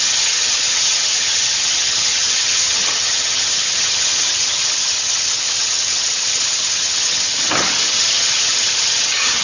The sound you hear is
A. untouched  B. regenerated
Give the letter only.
B